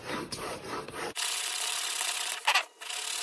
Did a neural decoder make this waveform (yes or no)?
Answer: no